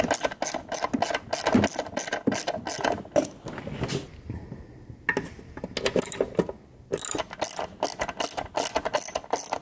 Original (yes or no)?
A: yes